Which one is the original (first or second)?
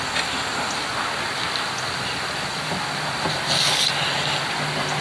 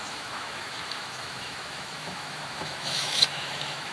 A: first